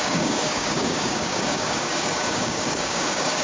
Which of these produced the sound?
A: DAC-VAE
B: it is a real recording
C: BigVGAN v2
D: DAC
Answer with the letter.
D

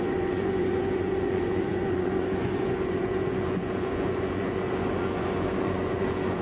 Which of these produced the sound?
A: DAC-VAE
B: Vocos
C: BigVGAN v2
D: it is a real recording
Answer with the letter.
B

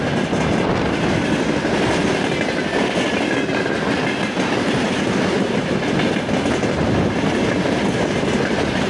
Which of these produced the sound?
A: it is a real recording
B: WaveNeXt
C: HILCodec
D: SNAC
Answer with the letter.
A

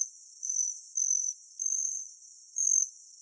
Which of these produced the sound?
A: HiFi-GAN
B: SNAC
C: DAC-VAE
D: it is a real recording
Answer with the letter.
D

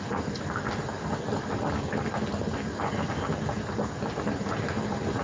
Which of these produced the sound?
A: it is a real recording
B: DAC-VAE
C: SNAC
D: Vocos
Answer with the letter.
A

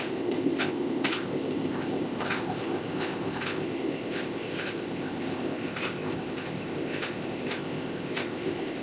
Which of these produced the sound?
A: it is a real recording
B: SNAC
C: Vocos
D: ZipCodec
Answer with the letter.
D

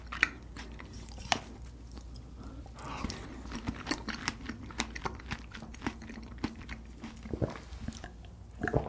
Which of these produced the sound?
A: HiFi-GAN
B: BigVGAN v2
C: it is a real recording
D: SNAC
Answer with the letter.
C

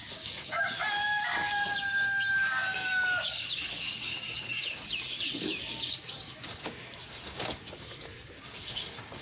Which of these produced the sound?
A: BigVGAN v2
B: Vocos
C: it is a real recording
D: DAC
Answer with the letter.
D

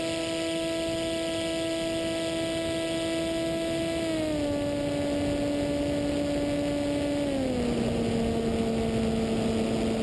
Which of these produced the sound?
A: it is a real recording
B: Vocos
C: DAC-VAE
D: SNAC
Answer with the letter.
A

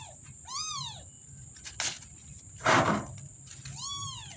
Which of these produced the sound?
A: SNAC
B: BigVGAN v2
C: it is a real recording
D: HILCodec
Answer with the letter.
C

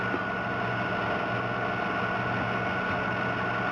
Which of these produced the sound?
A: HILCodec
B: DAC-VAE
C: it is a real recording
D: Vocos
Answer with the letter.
C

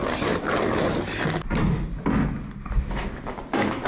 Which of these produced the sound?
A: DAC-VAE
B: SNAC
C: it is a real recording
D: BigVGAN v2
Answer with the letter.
C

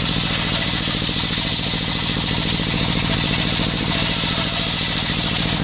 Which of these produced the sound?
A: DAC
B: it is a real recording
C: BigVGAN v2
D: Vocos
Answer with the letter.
C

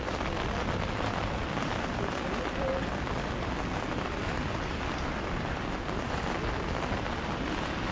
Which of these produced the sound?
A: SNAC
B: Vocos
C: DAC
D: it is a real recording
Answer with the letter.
D